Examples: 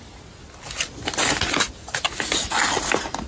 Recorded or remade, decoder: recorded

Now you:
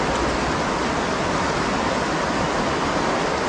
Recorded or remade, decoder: recorded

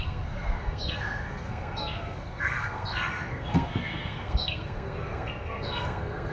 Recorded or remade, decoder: remade, codec, SNAC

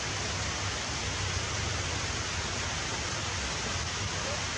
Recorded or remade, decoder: recorded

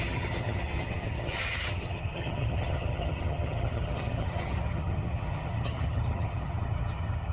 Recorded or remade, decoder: remade, vocoder, HiFi-GAN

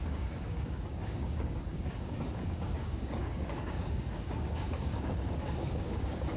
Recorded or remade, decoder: remade, codec, DAC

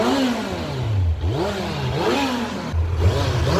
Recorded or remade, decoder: recorded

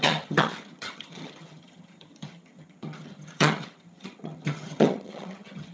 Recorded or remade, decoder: remade, vocoder, HiFi-GAN